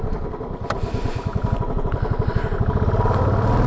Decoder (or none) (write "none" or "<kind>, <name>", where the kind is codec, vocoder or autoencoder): none